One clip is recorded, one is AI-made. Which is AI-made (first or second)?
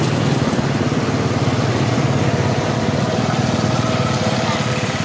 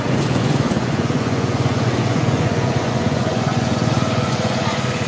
second